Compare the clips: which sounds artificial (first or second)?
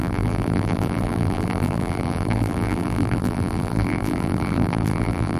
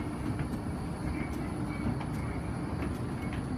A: first